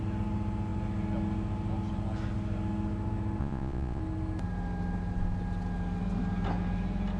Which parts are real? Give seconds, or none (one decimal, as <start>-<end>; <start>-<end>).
0.0-3.4; 4.0-7.2